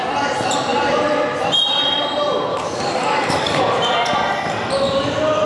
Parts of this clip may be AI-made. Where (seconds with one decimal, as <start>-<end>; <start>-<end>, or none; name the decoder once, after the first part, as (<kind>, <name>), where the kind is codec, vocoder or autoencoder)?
2.5-3.6 (codec, DAC)